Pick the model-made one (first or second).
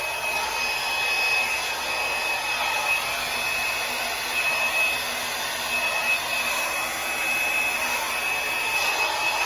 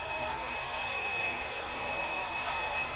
second